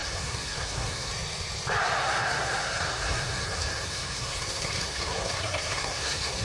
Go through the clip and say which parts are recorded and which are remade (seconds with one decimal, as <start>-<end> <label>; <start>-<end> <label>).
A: 0.0-1.1 remade; 1.1-1.8 recorded; 1.8-6.4 remade